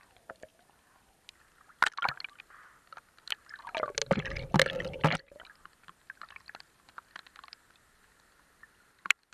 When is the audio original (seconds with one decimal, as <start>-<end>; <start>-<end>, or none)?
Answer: 0.0-9.3